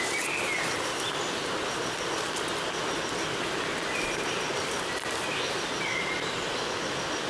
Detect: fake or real real